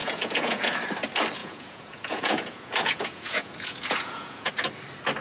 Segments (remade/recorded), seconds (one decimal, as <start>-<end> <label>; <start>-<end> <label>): 0.0-0.7 remade; 0.7-1.4 recorded; 1.4-4.5 remade; 4.5-5.2 recorded

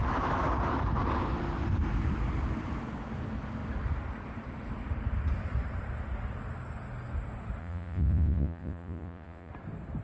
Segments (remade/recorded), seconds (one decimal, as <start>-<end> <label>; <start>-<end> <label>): 0.0-7.6 recorded; 7.6-9.5 remade; 9.5-10.0 recorded

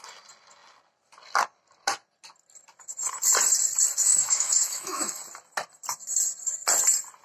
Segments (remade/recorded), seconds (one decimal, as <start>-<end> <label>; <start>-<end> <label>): 0.0-4.0 recorded; 4.0-5.2 remade; 5.2-7.2 recorded

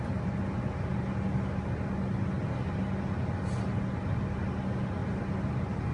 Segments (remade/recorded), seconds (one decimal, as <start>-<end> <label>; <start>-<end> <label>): 0.0-5.9 recorded

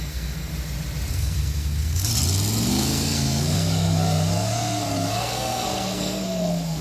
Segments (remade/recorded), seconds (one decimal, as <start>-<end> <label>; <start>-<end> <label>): 0.0-0.5 remade; 0.5-1.1 recorded; 1.1-2.1 remade; 2.1-2.7 recorded; 2.7-6.8 remade

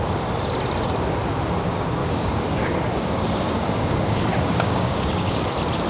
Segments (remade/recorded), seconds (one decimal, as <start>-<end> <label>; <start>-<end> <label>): 0.0-2.0 recorded; 2.0-5.5 remade; 5.5-5.9 recorded

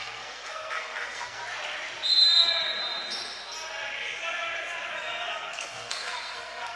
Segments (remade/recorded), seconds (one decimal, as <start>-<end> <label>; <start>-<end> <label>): 0.0-1.4 remade; 1.4-4.9 recorded; 4.9-6.8 remade